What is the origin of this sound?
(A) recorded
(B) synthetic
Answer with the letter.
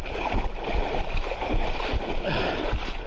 A